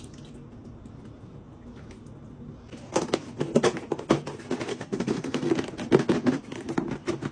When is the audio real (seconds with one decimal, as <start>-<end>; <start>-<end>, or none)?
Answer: 0.0-4.7; 5.5-7.3